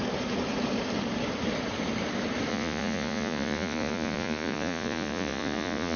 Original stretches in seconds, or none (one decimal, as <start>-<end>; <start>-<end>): 0.0-2.5